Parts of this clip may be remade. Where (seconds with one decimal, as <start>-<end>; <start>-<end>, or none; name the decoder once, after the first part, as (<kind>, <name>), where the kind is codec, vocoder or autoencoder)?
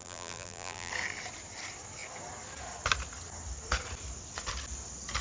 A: 0.0-0.9 (vocoder, BigVGAN v2)